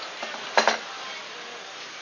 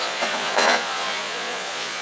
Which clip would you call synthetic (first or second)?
second